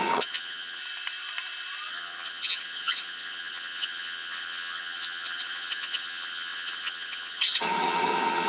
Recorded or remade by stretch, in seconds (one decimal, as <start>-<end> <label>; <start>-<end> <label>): 0.0-0.8 remade; 0.8-1.9 recorded; 1.9-8.5 remade